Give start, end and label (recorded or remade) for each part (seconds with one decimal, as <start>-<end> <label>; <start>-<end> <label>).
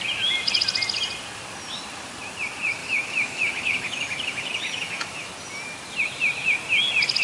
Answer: 0.0-2.8 recorded; 2.8-5.3 remade; 5.3-7.2 recorded